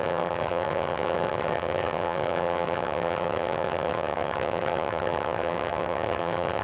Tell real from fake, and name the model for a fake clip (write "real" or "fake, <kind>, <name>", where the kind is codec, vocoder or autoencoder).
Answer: fake, vocoder, HiFi-GAN